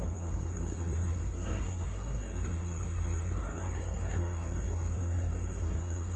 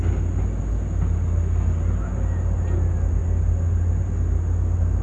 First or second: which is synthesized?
first